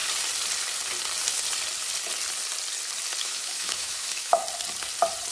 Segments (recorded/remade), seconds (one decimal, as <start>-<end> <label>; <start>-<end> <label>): 0.0-3.2 recorded; 3.2-4.4 remade; 4.4-5.3 recorded